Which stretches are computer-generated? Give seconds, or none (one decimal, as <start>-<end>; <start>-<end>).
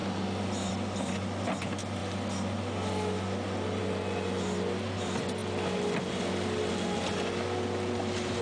none